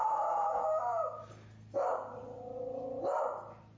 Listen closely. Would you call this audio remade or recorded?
recorded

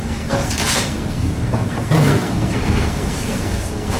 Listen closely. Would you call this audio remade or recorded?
remade